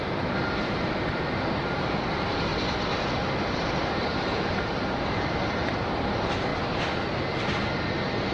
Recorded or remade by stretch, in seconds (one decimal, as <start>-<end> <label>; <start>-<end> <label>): 0.0-2.5 remade; 2.5-3.9 recorded; 3.9-5.6 remade; 5.6-6.1 recorded; 6.1-6.5 remade; 6.5-8.3 recorded